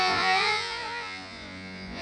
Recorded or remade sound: remade